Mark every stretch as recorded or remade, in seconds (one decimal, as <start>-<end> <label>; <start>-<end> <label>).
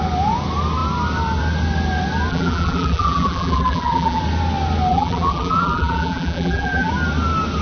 0.0-2.3 recorded; 2.3-4.2 remade; 4.2-4.9 recorded; 4.9-6.9 remade; 6.9-7.6 recorded